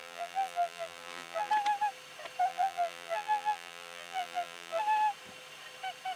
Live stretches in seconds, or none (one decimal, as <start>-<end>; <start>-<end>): 1.5-2.5; 4.8-6.2